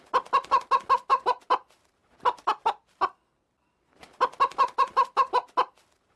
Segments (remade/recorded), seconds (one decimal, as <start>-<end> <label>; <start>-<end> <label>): 0.0-6.2 recorded